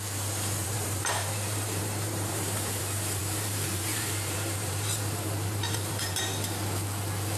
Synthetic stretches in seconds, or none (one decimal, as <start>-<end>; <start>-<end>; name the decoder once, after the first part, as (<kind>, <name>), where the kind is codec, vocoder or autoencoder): 0.6-2.8 (vocoder, BigVGAN v2); 3.2-6.2